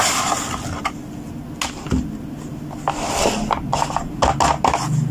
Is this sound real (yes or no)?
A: yes